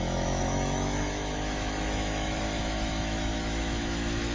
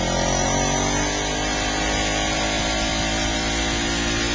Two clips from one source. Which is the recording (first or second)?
second